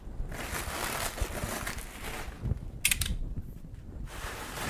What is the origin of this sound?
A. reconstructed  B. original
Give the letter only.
B